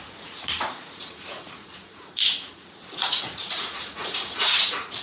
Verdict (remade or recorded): remade